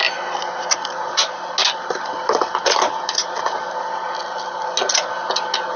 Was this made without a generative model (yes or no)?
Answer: yes